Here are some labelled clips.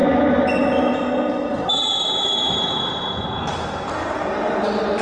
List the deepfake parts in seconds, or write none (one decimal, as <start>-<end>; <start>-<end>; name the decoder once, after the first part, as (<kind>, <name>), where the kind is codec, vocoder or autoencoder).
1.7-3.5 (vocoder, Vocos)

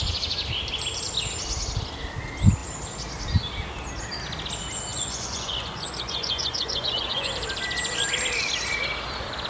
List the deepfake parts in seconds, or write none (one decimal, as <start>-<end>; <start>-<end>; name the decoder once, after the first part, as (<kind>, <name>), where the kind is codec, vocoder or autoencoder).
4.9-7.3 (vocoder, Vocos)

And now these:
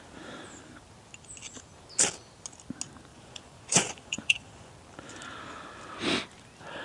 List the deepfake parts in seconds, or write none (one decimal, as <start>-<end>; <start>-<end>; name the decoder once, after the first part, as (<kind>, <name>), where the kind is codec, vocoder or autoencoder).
3.1-4.7 (vocoder, Vocos)

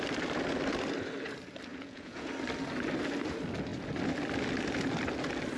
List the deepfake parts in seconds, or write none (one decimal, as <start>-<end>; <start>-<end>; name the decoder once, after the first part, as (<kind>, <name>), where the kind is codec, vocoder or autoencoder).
1.7-2.3 (vocoder, Vocos)

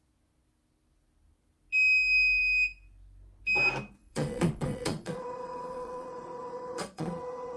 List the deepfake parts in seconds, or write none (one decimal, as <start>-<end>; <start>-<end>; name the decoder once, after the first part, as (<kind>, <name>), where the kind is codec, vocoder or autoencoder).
4.0-7.6 (vocoder, Vocos)

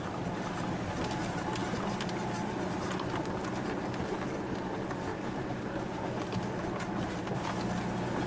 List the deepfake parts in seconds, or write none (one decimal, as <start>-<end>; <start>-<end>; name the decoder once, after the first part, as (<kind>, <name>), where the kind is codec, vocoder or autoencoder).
none